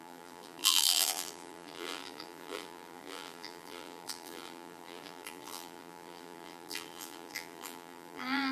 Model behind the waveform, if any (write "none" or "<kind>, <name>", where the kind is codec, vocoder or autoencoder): vocoder, BigVGAN v2